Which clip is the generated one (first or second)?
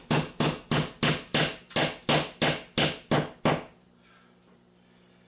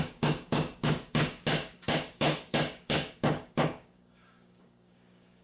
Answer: second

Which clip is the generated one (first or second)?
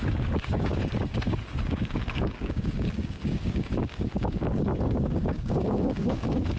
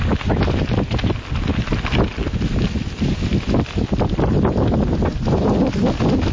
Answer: first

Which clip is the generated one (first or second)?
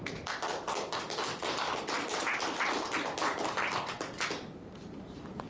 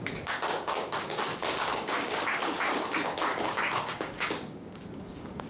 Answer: second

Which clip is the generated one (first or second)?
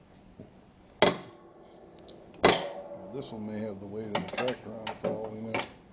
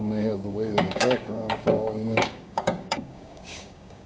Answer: second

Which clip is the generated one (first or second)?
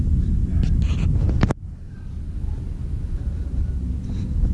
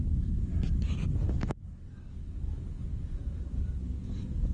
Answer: second